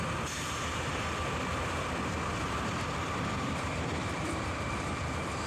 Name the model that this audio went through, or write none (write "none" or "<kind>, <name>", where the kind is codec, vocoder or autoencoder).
vocoder, BigVGAN v2